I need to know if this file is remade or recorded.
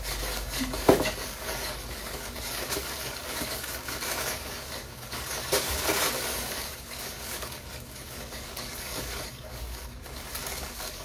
remade